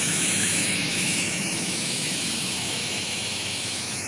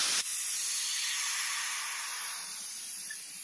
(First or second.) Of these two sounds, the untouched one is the second